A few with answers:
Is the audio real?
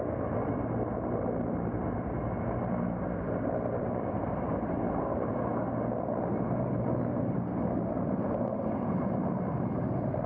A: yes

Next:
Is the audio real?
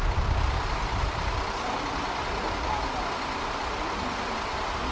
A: yes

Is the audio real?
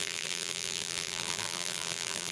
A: no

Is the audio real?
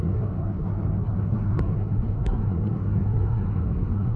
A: no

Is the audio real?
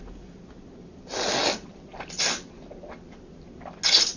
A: yes